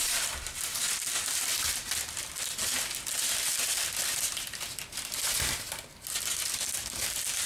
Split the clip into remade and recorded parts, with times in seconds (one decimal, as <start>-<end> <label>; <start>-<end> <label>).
0.0-7.5 recorded